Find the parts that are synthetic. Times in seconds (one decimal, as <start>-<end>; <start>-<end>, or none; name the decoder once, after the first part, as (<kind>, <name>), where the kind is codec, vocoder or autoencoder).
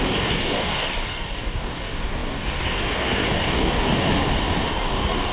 0.0-4.1 (codec, DAC); 4.7-5.3